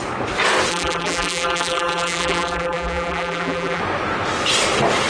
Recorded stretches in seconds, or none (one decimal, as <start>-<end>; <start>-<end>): 0.0-0.7; 3.8-5.1

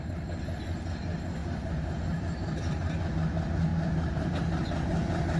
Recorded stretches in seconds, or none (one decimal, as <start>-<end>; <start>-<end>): 0.0-1.4; 3.1-3.7; 4.3-5.4

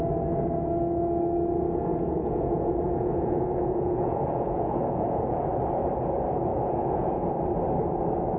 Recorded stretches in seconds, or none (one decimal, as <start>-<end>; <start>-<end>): 0.0-1.9; 5.5-6.5; 7.3-8.4

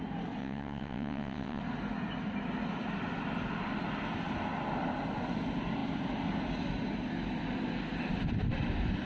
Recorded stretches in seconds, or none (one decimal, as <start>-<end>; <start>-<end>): 0.0-0.4; 1.6-9.1

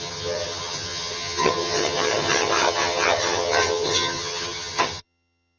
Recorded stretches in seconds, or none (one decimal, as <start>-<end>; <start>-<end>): none

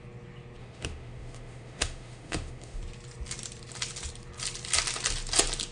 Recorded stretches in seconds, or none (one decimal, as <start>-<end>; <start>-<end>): 0.0-0.6; 2.8-5.7

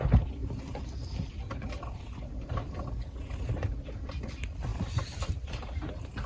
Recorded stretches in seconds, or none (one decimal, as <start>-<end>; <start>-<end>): 0.0-0.4; 4.2-4.7; 5.8-6.3

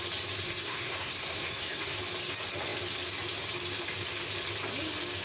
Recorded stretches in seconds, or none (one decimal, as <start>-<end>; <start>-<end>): 0.0-0.4; 2.0-5.2